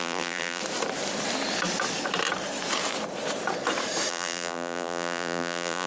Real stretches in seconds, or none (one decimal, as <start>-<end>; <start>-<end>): 0.6-4.1